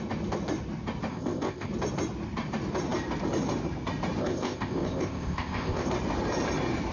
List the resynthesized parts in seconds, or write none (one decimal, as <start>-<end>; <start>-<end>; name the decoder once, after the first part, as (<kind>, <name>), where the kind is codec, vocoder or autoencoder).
1.1-1.7 (codec, ZipCodec); 4.2-5.9